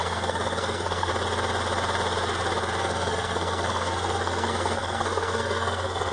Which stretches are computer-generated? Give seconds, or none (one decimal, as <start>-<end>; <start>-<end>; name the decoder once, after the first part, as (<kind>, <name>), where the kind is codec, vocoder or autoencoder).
0.0-1.1 (codec, SNAC); 2.8-6.1